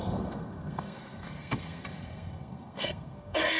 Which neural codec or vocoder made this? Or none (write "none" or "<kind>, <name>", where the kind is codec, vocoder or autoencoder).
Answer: codec, SNAC